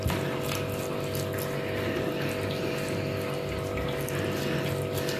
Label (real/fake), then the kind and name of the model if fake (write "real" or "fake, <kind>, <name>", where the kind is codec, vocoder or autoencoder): real